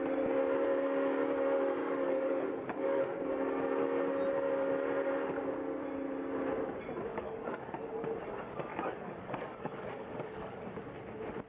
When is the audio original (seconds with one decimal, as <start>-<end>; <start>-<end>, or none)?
0.0-1.8; 3.2-7.1; 7.8-8.7; 10.6-11.5